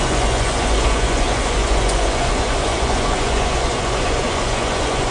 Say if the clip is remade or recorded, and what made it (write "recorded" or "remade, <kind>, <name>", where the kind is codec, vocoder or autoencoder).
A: remade, vocoder, Vocos